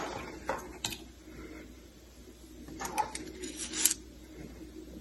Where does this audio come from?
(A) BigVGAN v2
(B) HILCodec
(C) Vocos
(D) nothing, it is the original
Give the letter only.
D